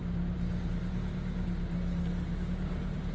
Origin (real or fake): real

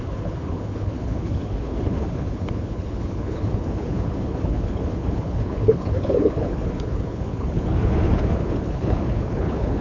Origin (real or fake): fake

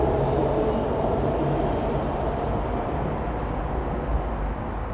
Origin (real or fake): real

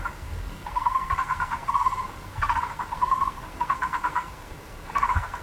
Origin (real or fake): fake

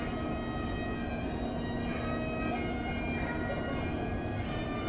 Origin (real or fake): real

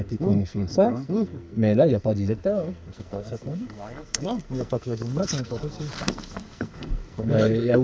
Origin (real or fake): fake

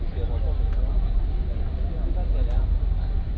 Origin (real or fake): real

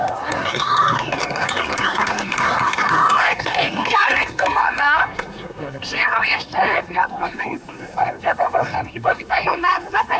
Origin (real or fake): fake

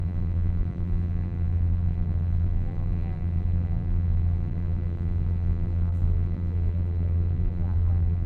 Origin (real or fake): fake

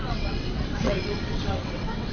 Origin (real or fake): fake